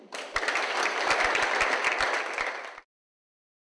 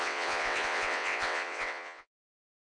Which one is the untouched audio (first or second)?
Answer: first